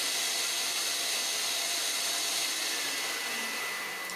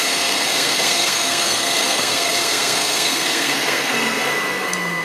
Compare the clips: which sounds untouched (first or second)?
first